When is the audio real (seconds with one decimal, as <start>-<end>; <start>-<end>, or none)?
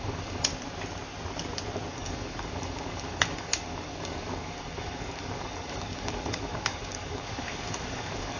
0.5-1.9